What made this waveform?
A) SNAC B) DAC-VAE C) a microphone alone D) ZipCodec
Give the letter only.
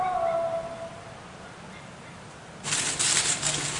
C